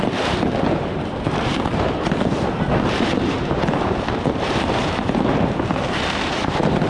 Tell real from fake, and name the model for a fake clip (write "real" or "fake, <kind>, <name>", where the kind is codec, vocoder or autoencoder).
fake, vocoder, BigVGAN v2